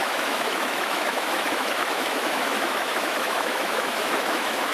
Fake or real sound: fake